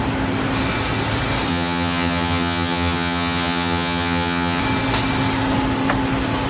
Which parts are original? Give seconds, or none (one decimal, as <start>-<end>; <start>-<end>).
0.0-1.5; 4.6-6.5